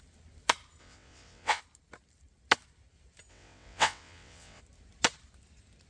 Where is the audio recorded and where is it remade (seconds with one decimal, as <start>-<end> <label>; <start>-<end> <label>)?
0.0-0.8 recorded; 0.8-1.6 remade; 1.6-3.3 recorded; 3.3-4.6 remade; 4.6-5.9 recorded